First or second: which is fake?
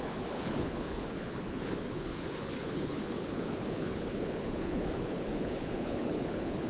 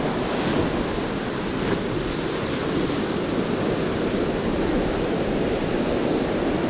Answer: first